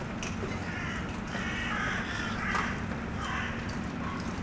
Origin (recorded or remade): recorded